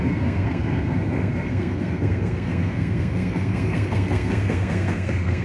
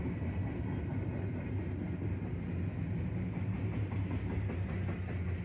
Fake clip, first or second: first